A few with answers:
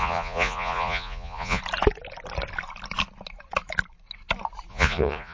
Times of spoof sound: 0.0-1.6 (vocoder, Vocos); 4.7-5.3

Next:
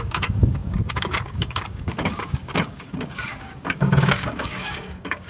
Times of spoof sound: 0.0-5.3 (codec, DAC)

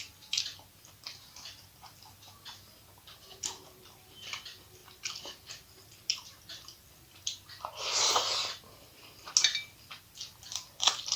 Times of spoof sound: none

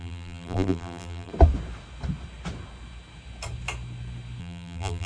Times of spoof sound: 0.0-1.3 (vocoder, BigVGAN v2); 4.4-5.1

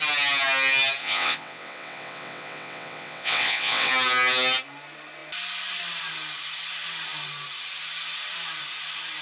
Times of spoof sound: 1.0-3.9 (vocoder, WaveNeXt)

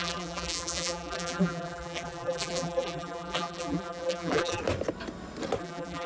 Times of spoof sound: 0.0-4.6 (vocoder, BigVGAN v2); 5.6-6.1

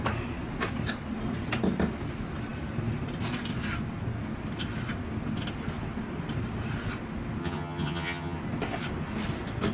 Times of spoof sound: 7.4-8.4 (vocoder, HiFi-GAN)

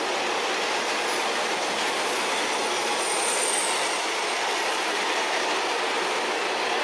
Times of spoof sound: 0.0-2.9 (vocoder, BigVGAN v2); 4.7-6.8